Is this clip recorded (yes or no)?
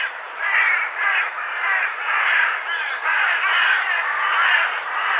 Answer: no